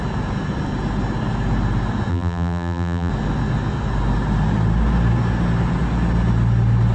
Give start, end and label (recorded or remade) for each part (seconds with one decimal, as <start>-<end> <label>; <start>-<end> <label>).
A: 0.0-2.1 recorded; 2.1-3.1 remade; 3.1-6.9 recorded